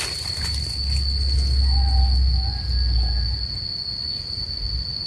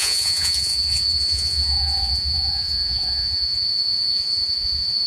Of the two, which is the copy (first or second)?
second